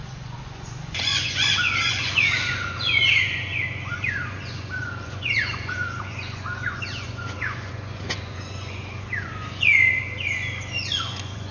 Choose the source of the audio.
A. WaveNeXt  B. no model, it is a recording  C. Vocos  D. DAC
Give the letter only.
C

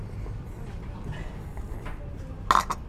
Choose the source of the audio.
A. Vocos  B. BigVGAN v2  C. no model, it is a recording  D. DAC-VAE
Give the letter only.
C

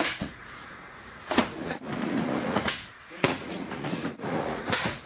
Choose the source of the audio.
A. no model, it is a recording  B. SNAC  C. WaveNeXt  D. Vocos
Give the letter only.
D